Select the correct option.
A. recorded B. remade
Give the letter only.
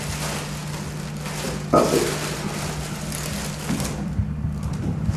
A